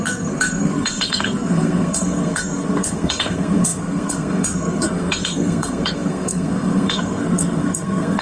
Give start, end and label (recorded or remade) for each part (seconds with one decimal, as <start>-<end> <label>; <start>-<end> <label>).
0.0-8.2 remade